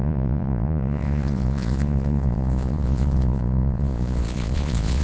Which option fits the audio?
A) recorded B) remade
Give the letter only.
B